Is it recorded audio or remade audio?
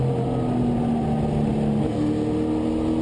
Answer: recorded